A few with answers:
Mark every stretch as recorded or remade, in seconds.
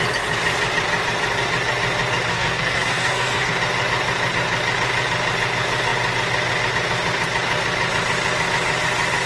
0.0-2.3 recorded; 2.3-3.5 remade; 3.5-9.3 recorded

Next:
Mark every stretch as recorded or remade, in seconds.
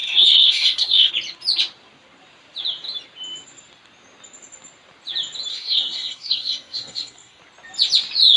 0.0-1.1 remade; 1.1-5.5 recorded; 5.5-7.4 remade; 7.4-8.4 recorded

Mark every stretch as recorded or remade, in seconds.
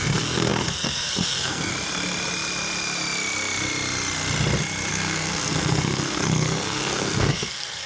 0.0-1.7 remade; 1.7-4.9 recorded; 4.9-7.9 remade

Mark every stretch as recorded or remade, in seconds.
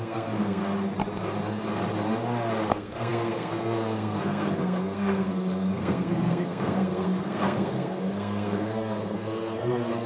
0.0-0.6 remade; 0.6-2.7 recorded; 2.7-10.1 remade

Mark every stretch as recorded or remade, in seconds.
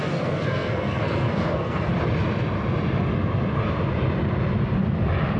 0.0-1.9 remade; 1.9-5.4 recorded